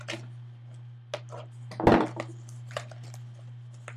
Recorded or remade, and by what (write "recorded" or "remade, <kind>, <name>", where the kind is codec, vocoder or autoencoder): recorded